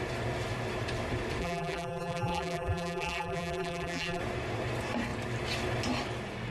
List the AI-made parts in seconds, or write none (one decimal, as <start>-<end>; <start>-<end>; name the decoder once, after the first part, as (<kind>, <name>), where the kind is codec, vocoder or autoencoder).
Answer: 1.4-4.2 (vocoder, BigVGAN v2)